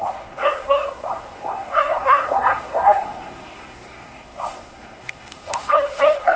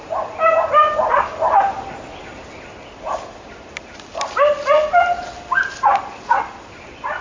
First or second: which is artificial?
first